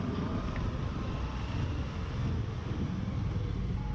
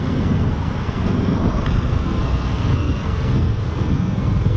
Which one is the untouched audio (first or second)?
first